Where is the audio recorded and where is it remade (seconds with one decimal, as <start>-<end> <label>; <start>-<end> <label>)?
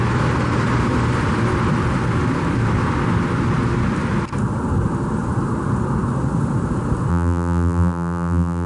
0.0-7.1 recorded; 7.1-8.7 remade